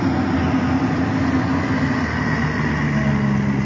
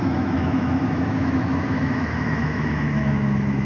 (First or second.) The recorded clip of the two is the first